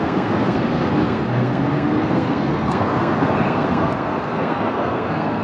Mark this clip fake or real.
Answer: fake